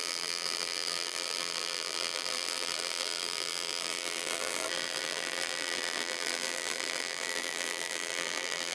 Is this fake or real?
fake